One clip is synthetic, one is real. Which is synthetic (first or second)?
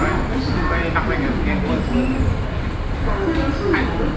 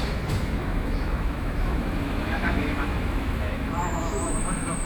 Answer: second